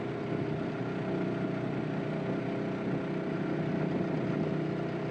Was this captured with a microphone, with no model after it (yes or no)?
yes